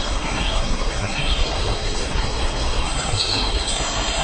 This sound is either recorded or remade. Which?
remade